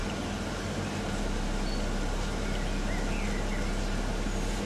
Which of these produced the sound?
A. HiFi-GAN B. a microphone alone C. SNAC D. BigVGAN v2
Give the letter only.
B